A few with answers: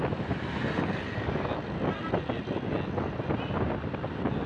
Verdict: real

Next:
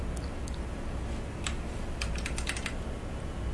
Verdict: real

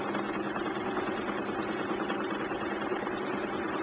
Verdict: real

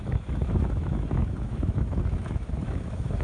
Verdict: fake